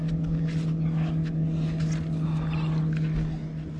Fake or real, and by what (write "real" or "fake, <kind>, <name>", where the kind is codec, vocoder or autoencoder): real